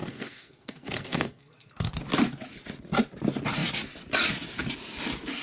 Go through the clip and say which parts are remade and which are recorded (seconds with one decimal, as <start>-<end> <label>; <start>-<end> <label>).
0.0-1.9 remade; 1.9-5.4 recorded